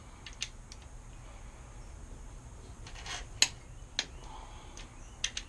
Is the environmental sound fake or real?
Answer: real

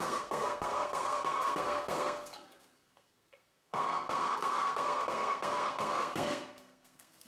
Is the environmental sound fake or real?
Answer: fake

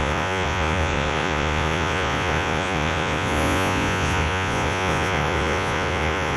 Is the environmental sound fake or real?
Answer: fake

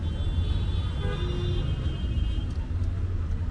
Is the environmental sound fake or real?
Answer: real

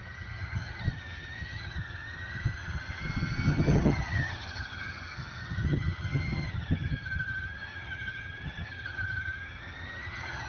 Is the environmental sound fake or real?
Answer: fake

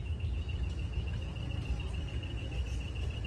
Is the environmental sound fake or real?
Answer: real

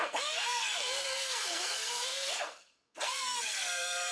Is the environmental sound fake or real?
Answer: fake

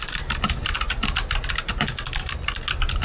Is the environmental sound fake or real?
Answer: real